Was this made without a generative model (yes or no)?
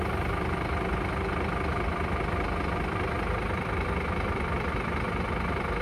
yes